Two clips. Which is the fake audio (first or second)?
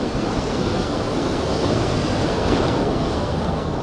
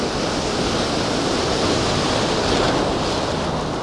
first